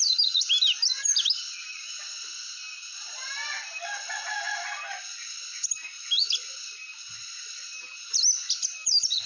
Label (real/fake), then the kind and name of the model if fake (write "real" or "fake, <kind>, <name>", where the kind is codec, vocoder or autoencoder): real